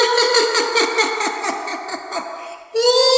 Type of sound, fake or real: fake